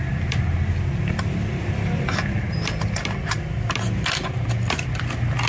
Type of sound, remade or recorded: recorded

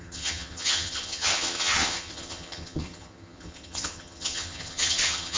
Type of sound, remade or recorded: remade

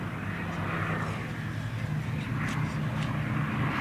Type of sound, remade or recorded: recorded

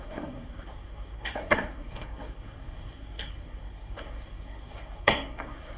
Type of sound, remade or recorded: remade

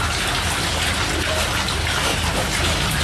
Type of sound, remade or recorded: recorded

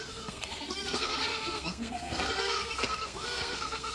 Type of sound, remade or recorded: remade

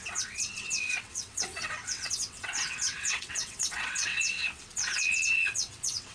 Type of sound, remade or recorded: remade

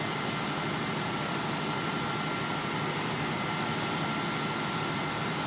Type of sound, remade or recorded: remade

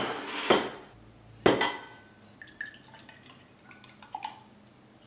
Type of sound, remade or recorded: recorded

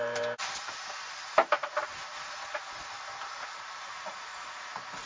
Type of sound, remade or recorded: remade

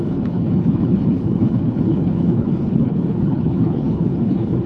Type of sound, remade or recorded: remade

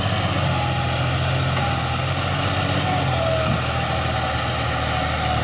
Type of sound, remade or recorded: recorded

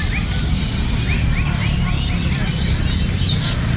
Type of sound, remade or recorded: recorded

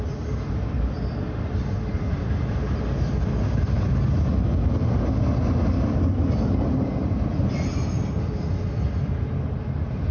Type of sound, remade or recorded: recorded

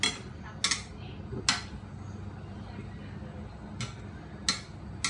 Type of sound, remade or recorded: recorded